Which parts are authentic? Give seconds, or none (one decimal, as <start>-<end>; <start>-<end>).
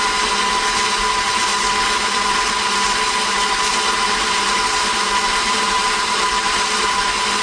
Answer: 0.0-4.0; 7.0-7.4